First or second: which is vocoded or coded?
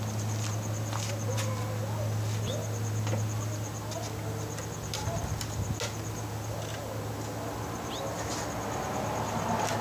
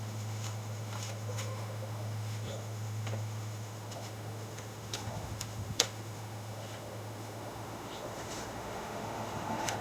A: second